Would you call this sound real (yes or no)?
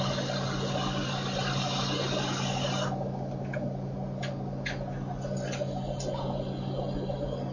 yes